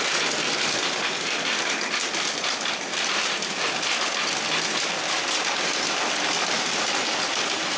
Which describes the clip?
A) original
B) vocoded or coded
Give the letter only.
A